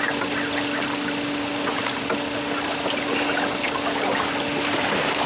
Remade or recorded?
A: recorded